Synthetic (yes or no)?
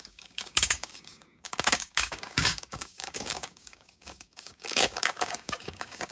yes